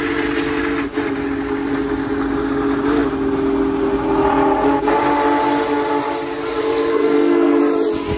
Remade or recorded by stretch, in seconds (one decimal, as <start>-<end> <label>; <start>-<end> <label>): 0.0-6.9 recorded; 6.9-7.6 remade; 7.6-8.2 recorded